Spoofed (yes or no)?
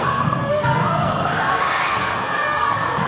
yes